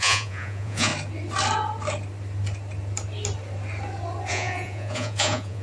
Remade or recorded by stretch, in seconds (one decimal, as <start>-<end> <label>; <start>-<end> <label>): 0.0-0.9 remade; 0.9-4.3 recorded; 4.3-5.6 remade